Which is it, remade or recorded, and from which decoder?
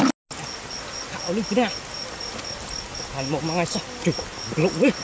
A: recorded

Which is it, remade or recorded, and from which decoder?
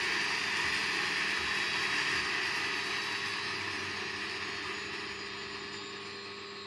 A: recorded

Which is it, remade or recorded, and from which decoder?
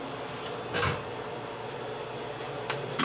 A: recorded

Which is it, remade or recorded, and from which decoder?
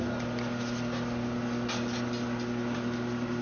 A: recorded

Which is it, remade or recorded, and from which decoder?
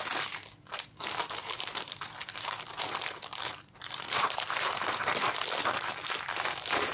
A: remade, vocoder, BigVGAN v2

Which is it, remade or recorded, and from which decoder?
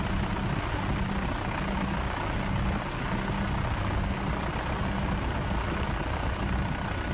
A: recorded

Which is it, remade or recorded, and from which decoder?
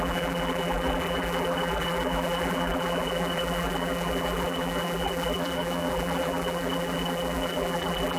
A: remade, vocoder, BigVGAN v2